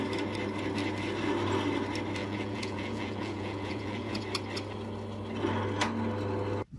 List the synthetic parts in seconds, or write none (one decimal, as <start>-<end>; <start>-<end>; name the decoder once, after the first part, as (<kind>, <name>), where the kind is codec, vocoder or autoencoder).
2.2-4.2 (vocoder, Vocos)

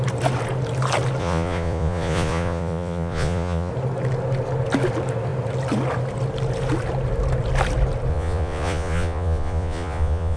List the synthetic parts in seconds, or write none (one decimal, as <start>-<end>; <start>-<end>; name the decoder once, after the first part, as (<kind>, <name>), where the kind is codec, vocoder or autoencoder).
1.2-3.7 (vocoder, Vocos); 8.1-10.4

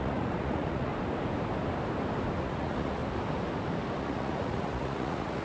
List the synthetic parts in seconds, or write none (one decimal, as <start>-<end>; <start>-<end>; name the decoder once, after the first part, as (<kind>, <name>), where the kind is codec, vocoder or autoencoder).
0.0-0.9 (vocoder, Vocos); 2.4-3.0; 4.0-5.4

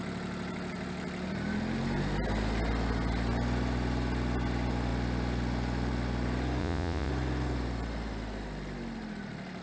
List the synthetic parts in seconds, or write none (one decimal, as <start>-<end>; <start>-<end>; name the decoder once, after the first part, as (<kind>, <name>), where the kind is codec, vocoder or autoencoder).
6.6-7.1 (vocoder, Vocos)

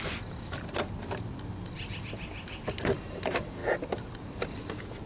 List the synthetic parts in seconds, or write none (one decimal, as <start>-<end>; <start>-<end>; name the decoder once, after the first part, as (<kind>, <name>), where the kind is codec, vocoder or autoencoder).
none

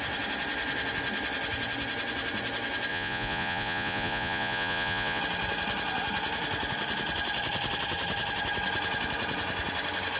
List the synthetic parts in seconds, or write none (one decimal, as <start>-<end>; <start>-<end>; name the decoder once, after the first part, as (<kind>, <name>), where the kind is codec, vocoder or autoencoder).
2.9-5.2 (vocoder, Vocos)

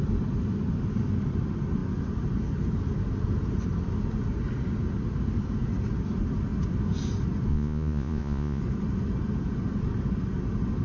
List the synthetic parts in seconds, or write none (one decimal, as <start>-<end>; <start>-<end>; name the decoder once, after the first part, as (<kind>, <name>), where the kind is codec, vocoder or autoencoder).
7.5-8.6 (vocoder, Vocos)

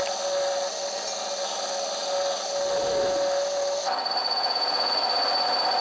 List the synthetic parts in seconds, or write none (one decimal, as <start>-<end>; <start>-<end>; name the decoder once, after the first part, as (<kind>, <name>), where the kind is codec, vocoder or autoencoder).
4.2-4.9 (vocoder, Vocos)